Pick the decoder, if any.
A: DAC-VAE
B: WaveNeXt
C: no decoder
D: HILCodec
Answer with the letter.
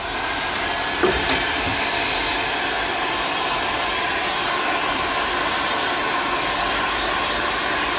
C